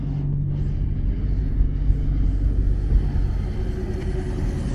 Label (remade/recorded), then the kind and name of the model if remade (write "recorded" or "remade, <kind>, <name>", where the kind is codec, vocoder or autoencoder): recorded